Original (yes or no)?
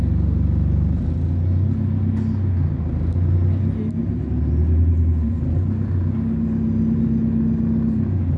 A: yes